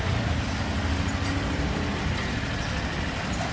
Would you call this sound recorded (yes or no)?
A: yes